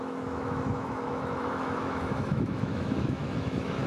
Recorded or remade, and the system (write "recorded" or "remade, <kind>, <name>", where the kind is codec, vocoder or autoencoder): remade, autoencoder, DAC-VAE